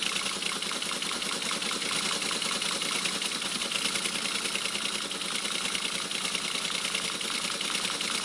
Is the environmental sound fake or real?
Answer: real